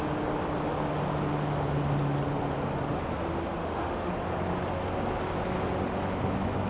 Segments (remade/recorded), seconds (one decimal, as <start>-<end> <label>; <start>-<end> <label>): 0.0-3.6 recorded; 3.6-4.1 remade; 4.1-6.7 recorded